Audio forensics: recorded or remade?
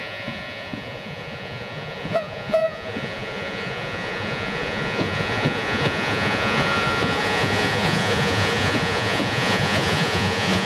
remade